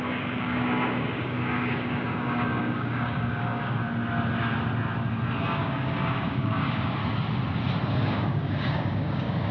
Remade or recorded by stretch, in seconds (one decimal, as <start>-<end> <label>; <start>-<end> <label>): 0.0-3.8 remade; 3.8-5.4 recorded; 5.4-7.0 remade; 7.0-7.9 recorded; 7.9-9.5 remade